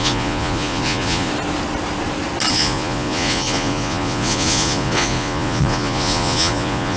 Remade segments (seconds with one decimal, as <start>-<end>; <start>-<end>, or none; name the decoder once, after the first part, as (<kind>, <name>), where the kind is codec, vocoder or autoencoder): 0.0-1.3 (vocoder, Vocos); 2.5-7.0

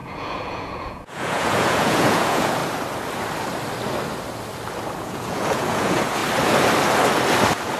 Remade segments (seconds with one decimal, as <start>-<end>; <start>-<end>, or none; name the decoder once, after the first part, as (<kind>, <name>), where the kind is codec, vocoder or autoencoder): 0.0-2.6 (vocoder, Vocos); 5.0-6.2

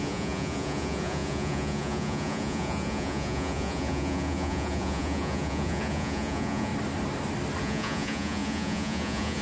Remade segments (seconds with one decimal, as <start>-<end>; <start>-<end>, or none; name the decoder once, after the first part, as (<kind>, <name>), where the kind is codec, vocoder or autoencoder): 0.0-6.7 (vocoder, Vocos); 7.6-9.4

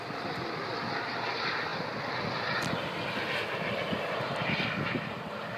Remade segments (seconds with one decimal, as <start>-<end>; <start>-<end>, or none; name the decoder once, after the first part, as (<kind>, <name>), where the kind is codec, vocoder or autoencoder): none